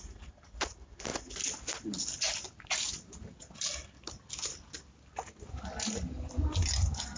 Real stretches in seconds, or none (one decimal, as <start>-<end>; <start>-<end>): 0.0-7.2